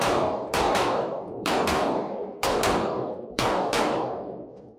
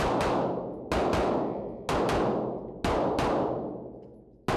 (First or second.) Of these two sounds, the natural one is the second